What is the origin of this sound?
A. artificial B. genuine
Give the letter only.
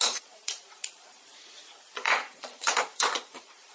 A